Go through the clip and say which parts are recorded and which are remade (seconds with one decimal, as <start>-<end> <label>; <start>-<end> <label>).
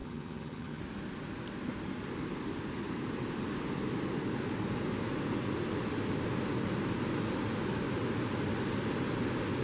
0.0-0.8 remade; 0.8-9.6 recorded